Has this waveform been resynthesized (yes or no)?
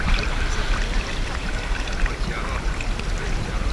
yes